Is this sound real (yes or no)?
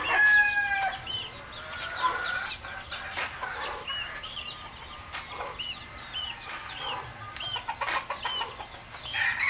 yes